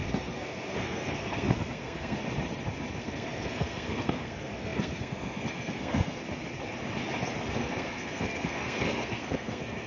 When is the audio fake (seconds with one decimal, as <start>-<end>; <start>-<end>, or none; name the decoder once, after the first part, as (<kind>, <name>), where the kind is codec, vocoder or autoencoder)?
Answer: 0.0-2.2 (codec, SNAC); 3.0-6.2; 7.5-9.9